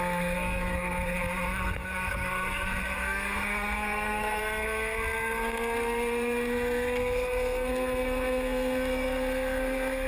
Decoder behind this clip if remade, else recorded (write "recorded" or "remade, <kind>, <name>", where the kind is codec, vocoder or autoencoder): remade, codec, SNAC